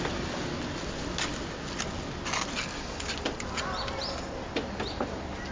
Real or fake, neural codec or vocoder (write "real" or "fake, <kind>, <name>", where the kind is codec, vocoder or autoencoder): real